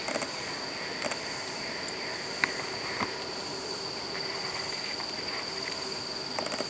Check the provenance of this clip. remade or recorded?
recorded